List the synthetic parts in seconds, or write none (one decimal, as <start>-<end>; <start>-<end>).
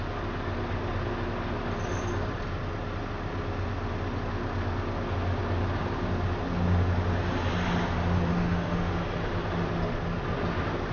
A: 8.3-8.9